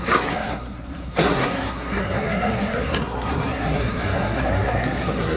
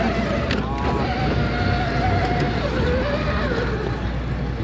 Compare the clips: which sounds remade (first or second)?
first